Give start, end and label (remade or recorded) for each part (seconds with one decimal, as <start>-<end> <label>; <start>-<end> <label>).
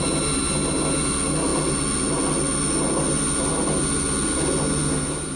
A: 0.0-5.4 recorded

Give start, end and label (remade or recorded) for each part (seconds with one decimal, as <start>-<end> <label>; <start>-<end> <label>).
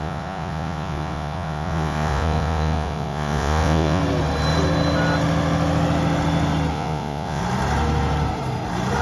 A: 0.0-4.0 remade; 4.0-6.7 recorded; 6.7-7.4 remade; 7.4-9.0 recorded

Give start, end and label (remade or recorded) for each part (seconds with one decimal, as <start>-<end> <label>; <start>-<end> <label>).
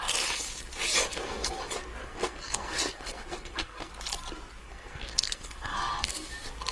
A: 0.0-1.1 recorded; 1.1-1.6 remade; 1.6-2.0 recorded; 2.0-3.9 remade; 3.9-4.6 recorded; 4.6-6.3 remade; 6.3-6.7 recorded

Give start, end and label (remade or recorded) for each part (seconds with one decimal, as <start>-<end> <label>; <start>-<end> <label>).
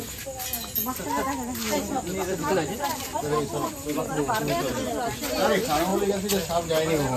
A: 0.0-7.2 recorded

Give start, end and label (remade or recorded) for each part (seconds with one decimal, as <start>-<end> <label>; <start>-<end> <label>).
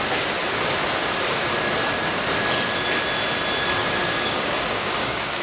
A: 0.0-3.8 recorded; 3.8-5.4 remade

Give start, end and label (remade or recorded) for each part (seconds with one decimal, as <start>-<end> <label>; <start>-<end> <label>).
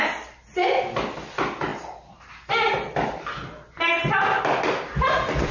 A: 0.0-5.5 recorded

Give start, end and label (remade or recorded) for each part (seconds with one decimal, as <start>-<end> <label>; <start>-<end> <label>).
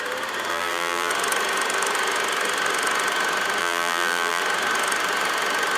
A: 0.0-0.5 recorded; 0.5-1.1 remade; 1.1-3.6 recorded; 3.6-4.4 remade; 4.4-5.8 recorded